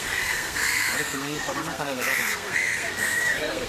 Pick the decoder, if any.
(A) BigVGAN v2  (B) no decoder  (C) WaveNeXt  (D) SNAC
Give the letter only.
D